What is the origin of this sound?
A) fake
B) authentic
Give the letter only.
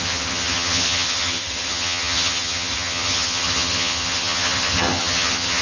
A